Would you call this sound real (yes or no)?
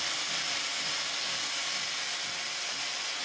yes